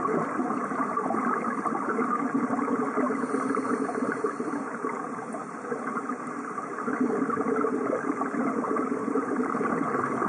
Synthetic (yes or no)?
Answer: no